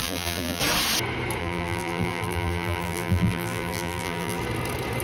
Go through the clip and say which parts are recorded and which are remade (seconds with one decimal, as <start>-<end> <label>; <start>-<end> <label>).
0.0-0.6 remade; 0.6-1.4 recorded; 1.4-4.4 remade; 4.4-5.0 recorded